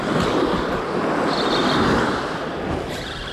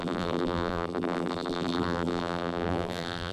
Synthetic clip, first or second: second